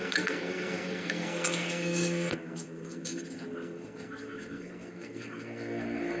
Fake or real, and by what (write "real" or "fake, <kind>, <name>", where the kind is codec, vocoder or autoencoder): fake, codec, SNAC